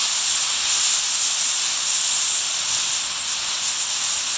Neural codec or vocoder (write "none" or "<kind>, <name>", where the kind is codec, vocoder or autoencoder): none